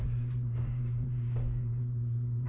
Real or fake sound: fake